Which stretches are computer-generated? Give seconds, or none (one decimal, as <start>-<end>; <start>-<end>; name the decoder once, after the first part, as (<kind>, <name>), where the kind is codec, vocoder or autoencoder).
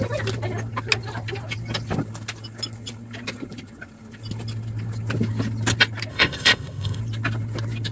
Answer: 6.1-7.0 (codec, ZipCodec)